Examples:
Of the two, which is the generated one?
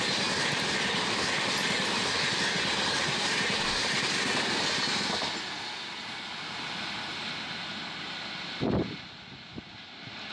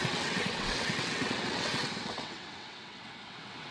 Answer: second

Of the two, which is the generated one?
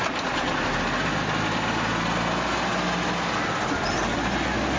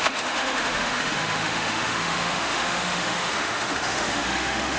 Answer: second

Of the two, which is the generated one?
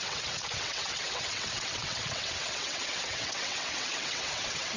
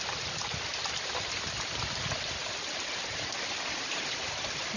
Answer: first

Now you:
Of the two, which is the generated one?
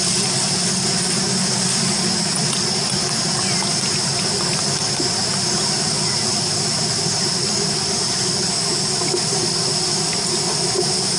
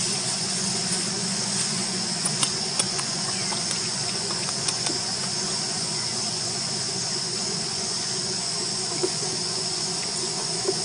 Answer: second